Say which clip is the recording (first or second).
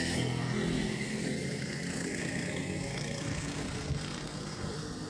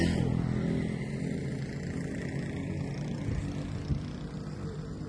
second